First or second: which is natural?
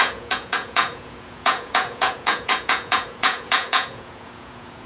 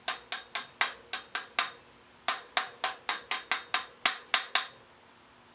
second